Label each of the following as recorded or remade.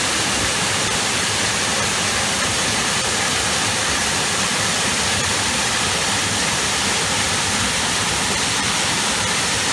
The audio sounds remade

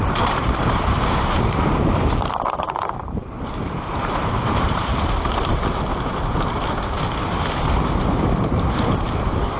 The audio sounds remade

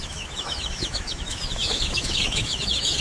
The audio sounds remade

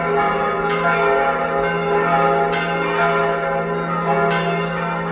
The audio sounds recorded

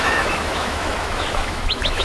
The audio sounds remade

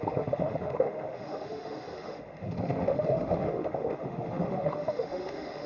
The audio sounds remade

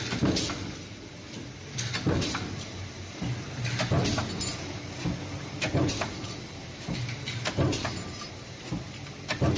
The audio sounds recorded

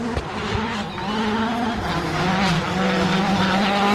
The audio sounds recorded